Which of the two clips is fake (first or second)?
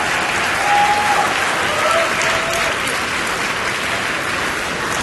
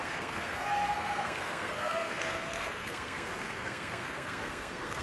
second